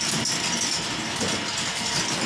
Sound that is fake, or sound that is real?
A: real